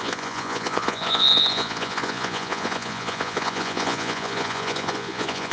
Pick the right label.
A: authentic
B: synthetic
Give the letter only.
B